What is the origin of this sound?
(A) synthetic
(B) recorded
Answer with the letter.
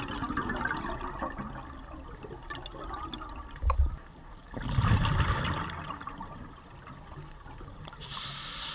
B